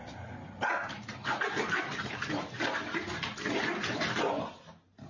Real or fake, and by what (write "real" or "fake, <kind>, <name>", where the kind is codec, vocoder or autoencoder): real